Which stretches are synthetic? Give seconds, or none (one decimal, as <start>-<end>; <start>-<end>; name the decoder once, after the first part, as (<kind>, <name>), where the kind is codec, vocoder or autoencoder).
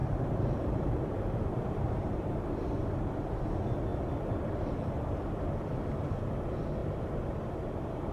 0.0-2.6 (vocoder, BigVGAN v2); 6.8-8.1